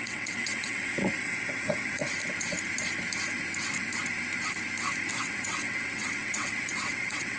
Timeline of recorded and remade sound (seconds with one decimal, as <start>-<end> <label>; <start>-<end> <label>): 0.0-2.0 remade; 2.0-5.1 recorded; 5.1-7.4 remade

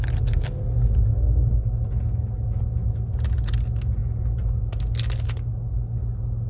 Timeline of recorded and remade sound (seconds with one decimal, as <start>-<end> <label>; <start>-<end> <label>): 0.0-6.5 recorded

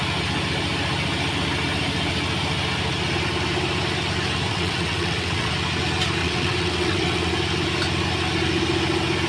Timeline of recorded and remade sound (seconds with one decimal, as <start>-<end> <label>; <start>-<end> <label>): 0.0-4.5 recorded; 4.5-5.5 remade; 5.5-6.2 recorded; 6.2-7.3 remade; 7.3-9.3 recorded

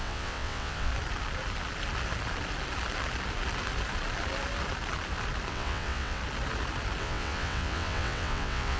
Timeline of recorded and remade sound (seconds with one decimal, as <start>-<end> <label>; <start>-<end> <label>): 0.0-0.9 remade; 0.9-5.5 recorded; 5.5-6.2 remade; 6.2-7.0 recorded; 7.0-8.8 remade